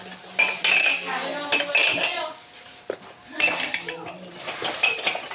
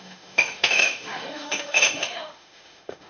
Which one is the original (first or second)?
first